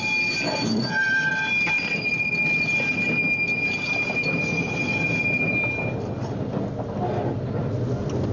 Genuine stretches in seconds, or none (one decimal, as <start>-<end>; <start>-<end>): 0.0-8.3